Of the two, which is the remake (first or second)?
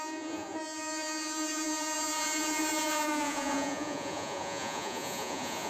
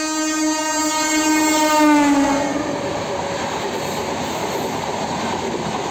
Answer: first